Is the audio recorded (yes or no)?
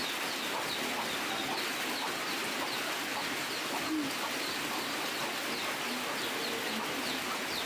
yes